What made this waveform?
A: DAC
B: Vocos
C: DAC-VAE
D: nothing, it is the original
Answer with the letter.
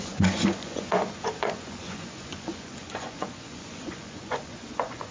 B